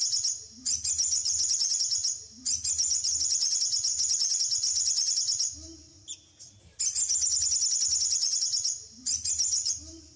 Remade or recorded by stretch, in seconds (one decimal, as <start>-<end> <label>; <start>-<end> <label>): 0.0-10.2 recorded

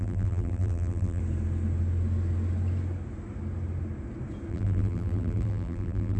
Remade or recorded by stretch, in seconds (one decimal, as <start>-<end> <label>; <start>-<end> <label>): 0.0-1.2 remade; 1.2-4.5 recorded; 4.5-6.2 remade